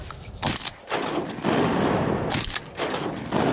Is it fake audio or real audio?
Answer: real